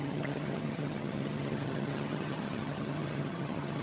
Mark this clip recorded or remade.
remade